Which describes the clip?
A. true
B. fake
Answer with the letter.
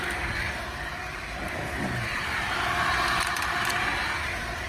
B